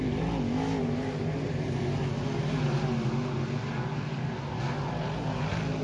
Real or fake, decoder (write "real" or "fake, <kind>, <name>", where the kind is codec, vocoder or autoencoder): real